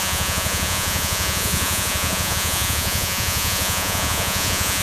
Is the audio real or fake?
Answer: fake